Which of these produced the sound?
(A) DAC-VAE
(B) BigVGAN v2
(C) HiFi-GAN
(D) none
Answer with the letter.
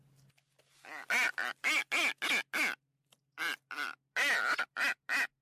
D